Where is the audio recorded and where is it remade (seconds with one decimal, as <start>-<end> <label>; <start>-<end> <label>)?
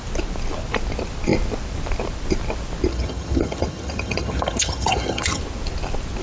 0.0-2.9 recorded; 2.9-5.4 remade; 5.4-6.2 recorded